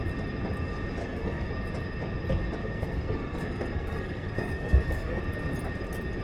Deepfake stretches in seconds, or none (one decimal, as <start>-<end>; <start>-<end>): 1.0-1.5; 2.6-5.2

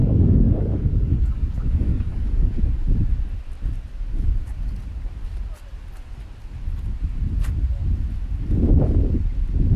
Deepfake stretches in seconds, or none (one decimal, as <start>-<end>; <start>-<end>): 0.0-2.6

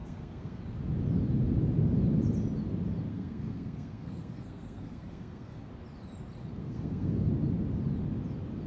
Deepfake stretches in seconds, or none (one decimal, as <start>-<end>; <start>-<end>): 0.0-0.6; 3.1-5.7; 6.6-7.3

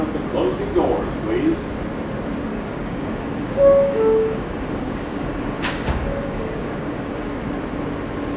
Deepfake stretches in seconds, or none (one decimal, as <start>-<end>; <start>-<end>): 2.5-7.5

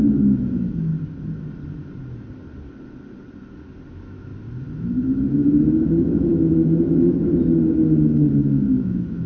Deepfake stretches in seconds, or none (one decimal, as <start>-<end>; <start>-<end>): 0.0-0.9; 3.9-4.3; 4.8-9.3

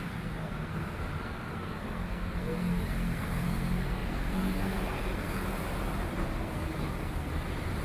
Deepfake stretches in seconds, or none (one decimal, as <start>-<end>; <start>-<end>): 0.0-5.4; 6.4-7.3